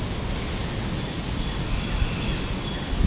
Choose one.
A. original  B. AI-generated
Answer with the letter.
A